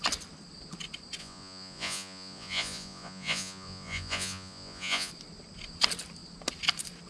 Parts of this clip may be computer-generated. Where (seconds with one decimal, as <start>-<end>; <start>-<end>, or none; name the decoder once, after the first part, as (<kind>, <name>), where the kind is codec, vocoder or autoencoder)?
1.2-5.1 (vocoder, Vocos)